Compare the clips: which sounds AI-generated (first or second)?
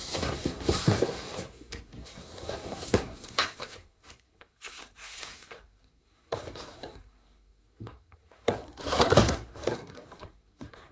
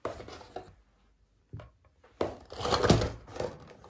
first